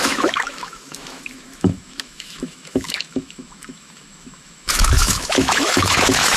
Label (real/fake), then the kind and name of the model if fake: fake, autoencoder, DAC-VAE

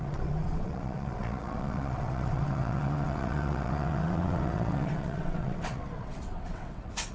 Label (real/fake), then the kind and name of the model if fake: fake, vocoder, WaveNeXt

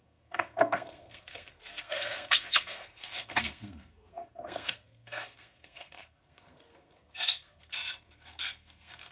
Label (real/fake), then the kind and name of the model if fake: fake, codec, SNAC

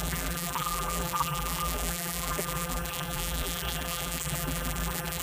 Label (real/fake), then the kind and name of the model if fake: fake, vocoder, BigVGAN v2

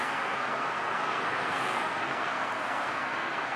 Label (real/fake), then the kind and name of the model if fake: fake, codec, SNAC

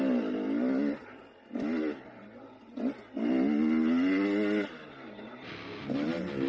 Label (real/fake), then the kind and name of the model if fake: real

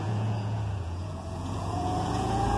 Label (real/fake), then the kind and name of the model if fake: fake, vocoder, Vocos